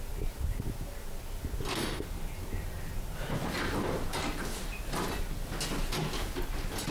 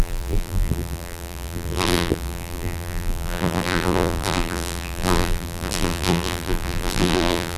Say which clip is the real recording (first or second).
first